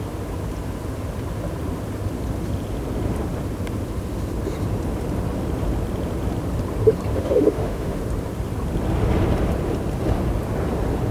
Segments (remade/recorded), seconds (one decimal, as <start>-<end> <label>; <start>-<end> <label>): 0.0-7.1 recorded; 7.1-8.0 remade; 8.0-11.1 recorded